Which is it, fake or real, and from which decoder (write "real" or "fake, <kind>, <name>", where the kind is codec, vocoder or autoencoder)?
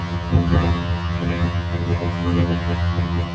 fake, vocoder, HiFi-GAN